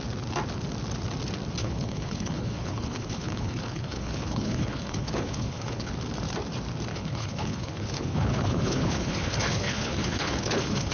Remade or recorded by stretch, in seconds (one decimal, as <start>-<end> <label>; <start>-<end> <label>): 0.0-1.6 recorded; 1.6-5.9 remade; 5.9-6.9 recorded; 6.9-10.9 remade